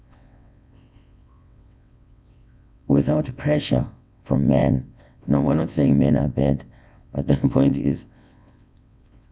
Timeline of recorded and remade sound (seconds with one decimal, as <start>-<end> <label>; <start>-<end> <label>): 0.0-9.3 remade